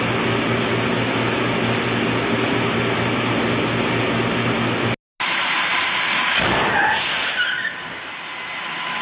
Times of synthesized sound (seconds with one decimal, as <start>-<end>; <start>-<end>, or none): none